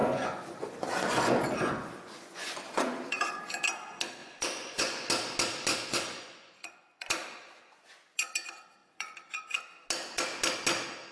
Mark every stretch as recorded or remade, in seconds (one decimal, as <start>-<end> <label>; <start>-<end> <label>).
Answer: 0.0-3.4 remade; 3.4-4.2 recorded; 4.2-5.1 remade; 5.1-5.7 recorded; 5.7-8.3 remade; 8.3-8.8 recorded; 8.8-9.6 remade; 9.6-11.1 recorded